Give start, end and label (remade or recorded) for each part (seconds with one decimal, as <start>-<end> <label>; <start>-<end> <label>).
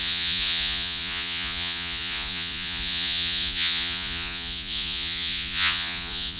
0.0-6.4 remade